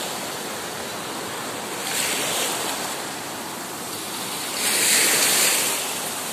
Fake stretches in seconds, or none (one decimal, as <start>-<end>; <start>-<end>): none